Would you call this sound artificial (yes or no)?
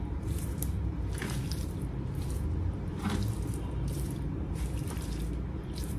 yes